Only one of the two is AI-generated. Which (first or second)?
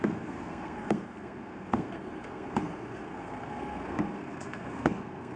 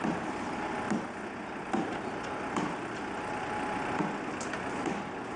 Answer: first